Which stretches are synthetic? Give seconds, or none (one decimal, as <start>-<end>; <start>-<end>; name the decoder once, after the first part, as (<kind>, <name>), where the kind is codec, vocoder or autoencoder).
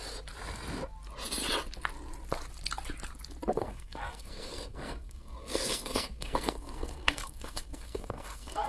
3.5-8.7 (codec, SNAC)